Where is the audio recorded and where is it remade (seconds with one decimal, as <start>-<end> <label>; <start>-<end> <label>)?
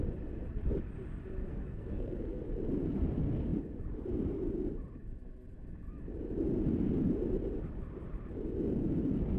0.0-1.5 recorded; 1.5-2.4 remade; 2.4-9.4 recorded